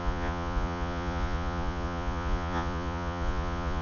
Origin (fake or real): fake